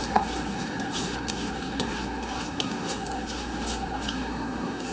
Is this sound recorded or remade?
remade